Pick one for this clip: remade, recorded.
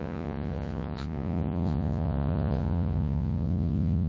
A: remade